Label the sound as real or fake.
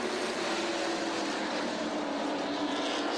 real